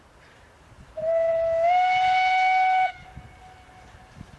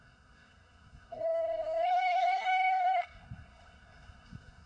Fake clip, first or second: second